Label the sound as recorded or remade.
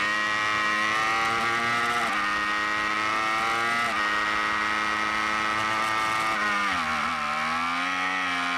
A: recorded